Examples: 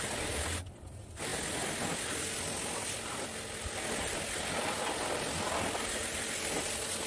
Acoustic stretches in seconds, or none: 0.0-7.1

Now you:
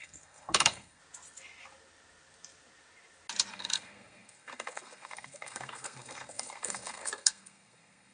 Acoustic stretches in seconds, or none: 1.0-3.5

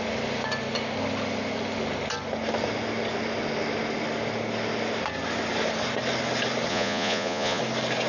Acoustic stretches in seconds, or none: 0.0-6.7; 7.6-8.1

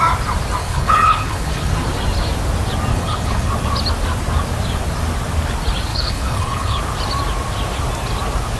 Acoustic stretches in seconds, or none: 0.0-0.6; 1.7-2.9; 3.5-5.9; 6.8-8.6

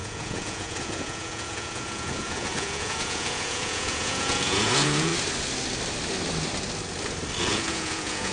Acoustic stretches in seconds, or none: 5.1-7.4

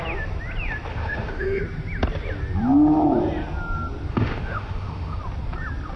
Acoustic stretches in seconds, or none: 0.0-0.9; 1.6-4.1; 5.2-6.0